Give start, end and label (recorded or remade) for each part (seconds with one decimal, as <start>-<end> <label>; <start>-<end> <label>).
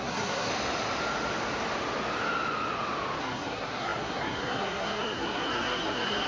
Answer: 0.0-0.5 remade; 0.5-3.2 recorded; 3.2-6.3 remade